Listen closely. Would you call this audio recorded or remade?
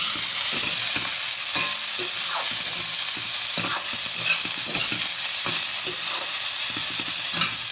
recorded